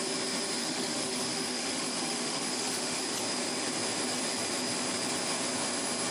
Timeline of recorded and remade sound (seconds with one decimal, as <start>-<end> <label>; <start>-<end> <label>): 0.0-0.6 recorded; 0.6-3.0 remade; 3.0-6.1 recorded